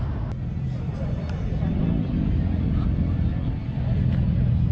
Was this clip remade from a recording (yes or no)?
no